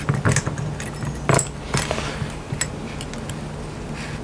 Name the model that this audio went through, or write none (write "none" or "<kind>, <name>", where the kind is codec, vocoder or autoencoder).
none